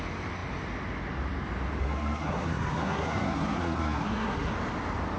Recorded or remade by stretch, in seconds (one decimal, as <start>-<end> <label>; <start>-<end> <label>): 0.0-1.8 recorded; 1.8-4.5 remade; 4.5-5.2 recorded